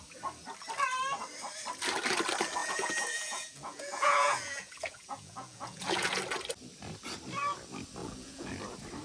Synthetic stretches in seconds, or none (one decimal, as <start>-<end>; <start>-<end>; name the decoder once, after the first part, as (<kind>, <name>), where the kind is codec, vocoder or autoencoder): 2.6-6.2 (vocoder, Vocos); 8.0-8.6